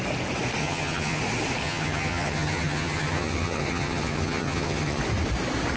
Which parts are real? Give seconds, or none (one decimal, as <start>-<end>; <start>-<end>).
0.0-0.6; 1.2-1.6; 5.0-5.8